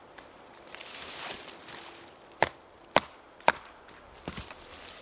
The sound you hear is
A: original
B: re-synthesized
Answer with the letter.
B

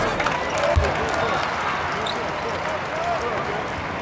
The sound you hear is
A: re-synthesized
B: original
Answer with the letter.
B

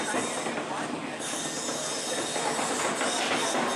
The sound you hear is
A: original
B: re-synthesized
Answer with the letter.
A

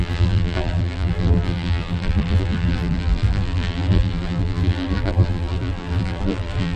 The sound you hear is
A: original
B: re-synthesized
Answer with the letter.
B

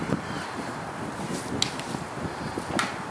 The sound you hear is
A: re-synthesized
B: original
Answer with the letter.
A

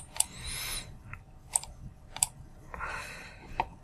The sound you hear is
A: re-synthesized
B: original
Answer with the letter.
A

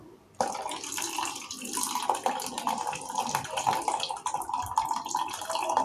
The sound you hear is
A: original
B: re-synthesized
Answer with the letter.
B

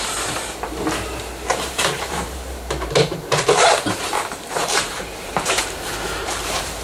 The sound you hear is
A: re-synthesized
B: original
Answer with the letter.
A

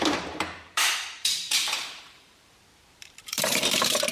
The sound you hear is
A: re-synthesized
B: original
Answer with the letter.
A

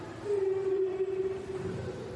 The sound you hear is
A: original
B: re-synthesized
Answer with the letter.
B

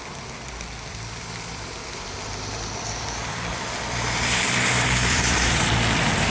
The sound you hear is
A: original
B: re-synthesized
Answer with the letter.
B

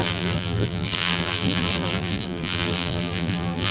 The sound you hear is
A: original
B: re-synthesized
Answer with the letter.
B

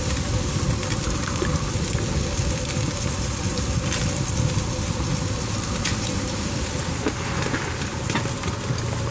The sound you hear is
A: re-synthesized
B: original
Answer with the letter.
A